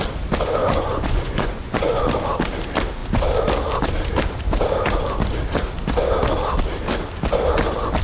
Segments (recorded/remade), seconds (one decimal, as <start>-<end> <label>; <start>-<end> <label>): 0.0-0.6 recorded; 0.6-2.0 remade; 2.0-8.0 recorded